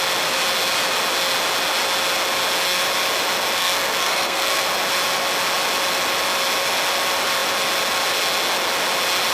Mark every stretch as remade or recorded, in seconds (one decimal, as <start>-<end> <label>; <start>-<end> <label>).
0.0-3.6 recorded; 3.6-4.6 remade; 4.6-9.3 recorded